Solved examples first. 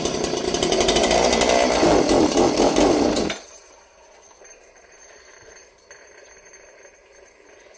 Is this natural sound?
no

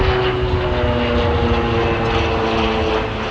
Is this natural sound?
yes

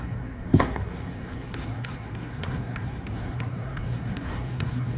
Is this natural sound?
no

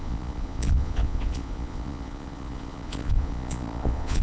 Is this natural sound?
no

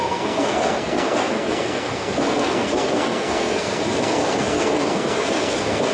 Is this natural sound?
no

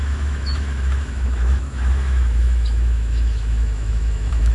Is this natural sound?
no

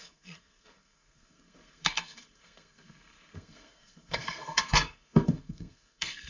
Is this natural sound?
no